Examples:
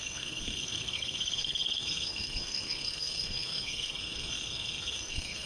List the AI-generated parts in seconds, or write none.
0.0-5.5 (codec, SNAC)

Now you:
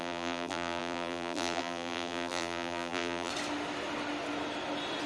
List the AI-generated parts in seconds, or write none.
0.0-3.3 (vocoder, BigVGAN v2)

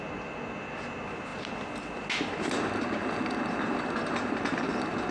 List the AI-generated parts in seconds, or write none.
none

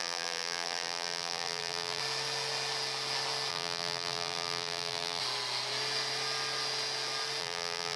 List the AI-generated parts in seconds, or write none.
0.0-2.0 (vocoder, BigVGAN v2); 3.5-5.2; 7.4-8.0

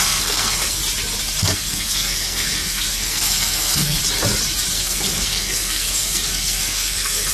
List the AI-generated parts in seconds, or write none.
0.0-0.8 (codec, SNAC); 1.4-4.0; 4.7-7.3

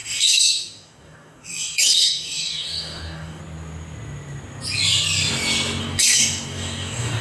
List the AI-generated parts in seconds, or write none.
0.0-3.4 (codec, DAC); 5.8-7.2

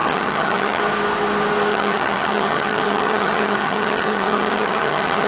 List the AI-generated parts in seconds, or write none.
0.0-0.8 (vocoder, HiFi-GAN); 1.7-5.3